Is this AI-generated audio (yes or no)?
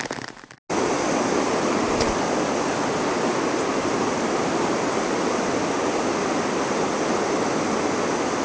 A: no